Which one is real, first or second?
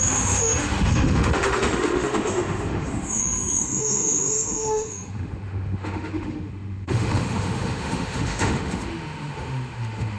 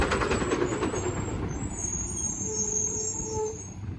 second